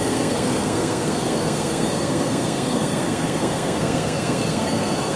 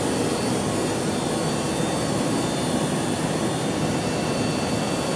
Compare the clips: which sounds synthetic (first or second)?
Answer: first